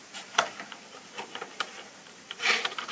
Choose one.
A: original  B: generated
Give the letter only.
B